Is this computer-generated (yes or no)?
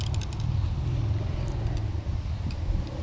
no